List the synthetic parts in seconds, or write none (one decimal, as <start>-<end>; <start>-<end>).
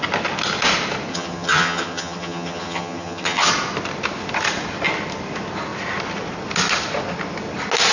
1.1-3.5